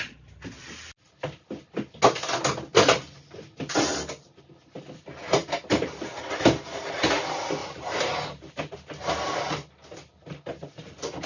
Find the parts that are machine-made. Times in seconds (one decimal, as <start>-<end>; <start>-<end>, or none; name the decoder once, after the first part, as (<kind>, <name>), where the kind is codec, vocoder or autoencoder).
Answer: 7.6-8.5 (vocoder, BigVGAN v2)